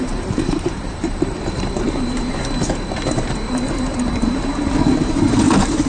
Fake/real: fake